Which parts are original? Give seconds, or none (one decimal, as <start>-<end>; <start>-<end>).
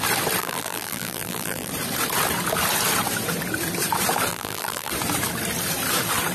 0.0-0.4; 1.7-4.3; 4.9-6.3